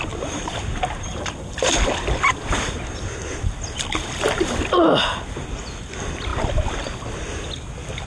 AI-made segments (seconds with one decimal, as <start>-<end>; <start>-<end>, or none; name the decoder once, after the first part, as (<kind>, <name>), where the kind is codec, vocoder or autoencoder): none